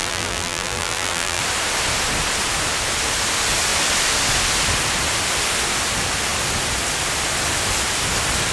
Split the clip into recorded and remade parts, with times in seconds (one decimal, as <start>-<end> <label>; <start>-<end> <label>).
0.0-1.4 remade; 1.4-8.5 recorded